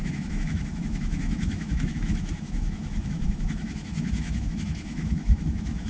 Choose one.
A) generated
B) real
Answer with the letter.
A